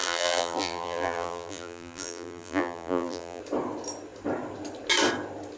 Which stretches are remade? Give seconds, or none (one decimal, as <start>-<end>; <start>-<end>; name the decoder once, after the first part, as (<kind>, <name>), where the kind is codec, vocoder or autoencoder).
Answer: 0.0-3.4 (vocoder, BigVGAN v2)